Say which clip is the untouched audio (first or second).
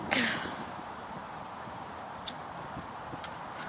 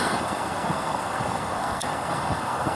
first